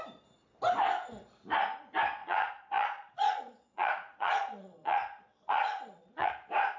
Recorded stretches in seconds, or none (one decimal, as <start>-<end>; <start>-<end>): 0.0-2.2; 6.3-6.8